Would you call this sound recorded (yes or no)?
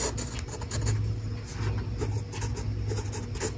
yes